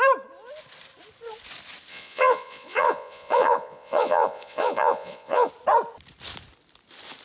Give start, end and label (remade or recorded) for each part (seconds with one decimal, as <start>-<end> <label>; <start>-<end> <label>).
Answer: 0.0-1.9 recorded; 1.9-5.5 remade; 5.5-7.2 recorded